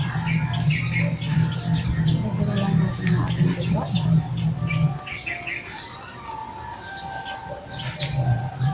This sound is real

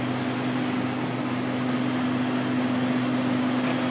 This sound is real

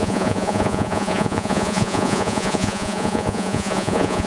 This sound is fake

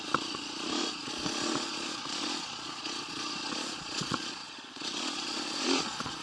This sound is fake